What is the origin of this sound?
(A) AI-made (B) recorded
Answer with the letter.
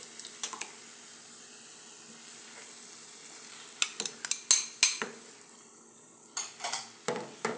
B